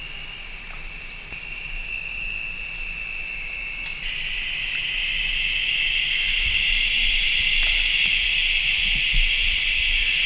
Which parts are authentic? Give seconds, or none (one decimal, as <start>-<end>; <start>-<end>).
0.0-10.3